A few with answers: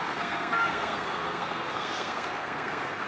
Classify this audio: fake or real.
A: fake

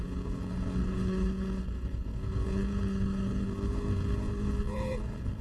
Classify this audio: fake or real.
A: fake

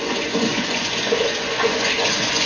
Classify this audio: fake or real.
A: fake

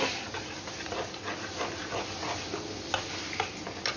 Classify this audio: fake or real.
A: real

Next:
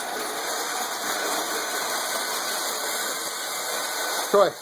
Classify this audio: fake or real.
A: real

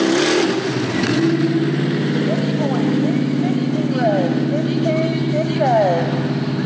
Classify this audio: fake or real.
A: real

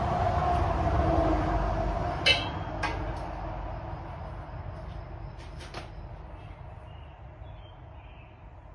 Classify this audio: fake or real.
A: real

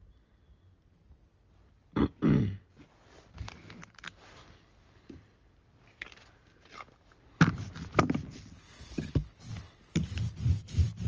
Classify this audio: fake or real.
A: real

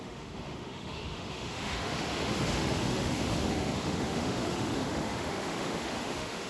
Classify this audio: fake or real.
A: fake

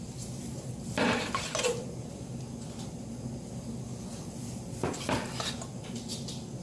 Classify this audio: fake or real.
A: real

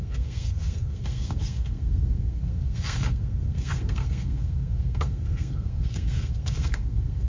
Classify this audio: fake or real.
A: fake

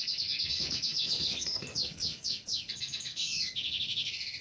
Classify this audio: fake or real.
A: fake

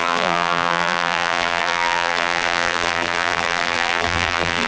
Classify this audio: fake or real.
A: fake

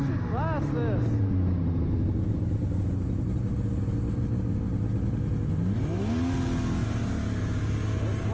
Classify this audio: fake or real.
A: real